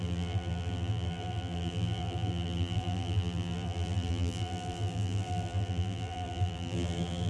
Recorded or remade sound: remade